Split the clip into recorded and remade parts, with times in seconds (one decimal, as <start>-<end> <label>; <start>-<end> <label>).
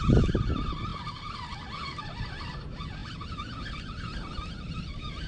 0.0-5.3 recorded